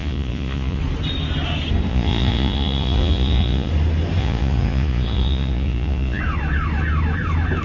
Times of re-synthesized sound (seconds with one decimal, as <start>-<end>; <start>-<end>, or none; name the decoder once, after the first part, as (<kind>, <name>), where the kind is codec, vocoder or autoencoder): 0.0-0.8 (vocoder, Vocos); 1.9-3.7; 4.2-6.2